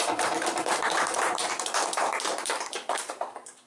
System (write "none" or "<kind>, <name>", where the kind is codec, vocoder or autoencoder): vocoder, BigVGAN v2